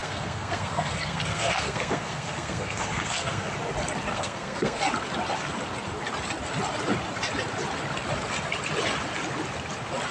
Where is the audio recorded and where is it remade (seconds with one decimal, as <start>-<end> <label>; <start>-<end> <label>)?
0.0-3.5 remade; 3.5-4.1 recorded; 4.1-4.8 remade; 4.8-10.1 recorded